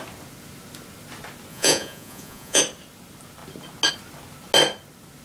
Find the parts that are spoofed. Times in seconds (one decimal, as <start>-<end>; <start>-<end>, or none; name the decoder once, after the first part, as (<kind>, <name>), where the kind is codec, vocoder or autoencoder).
1.5-2.6 (vocoder, Vocos)